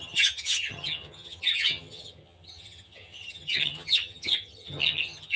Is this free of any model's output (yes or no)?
no